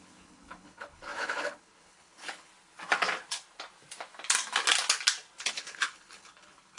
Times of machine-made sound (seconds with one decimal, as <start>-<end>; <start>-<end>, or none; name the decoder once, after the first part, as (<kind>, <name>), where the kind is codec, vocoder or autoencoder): 0.0-2.5 (codec, HILCodec); 5.5-6.8